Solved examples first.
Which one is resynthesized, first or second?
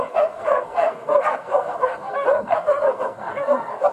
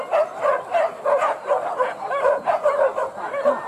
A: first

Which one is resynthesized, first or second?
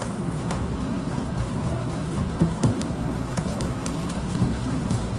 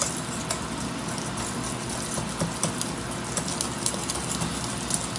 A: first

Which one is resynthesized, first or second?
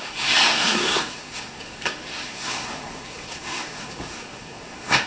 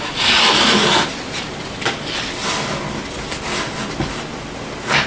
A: first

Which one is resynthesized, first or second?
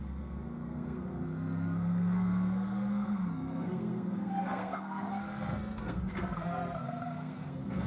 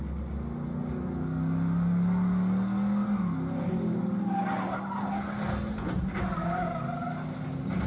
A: first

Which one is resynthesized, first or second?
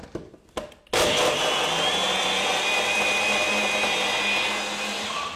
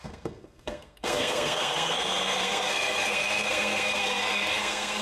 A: second